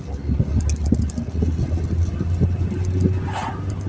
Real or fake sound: real